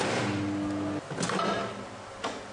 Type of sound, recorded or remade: recorded